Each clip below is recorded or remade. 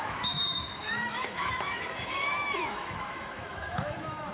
remade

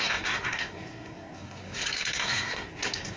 remade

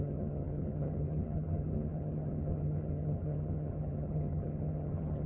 remade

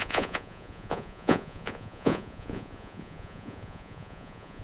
remade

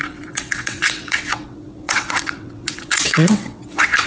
remade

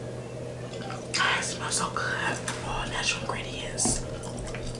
recorded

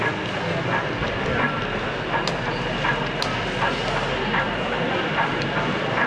recorded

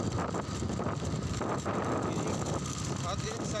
recorded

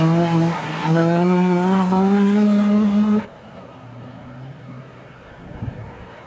remade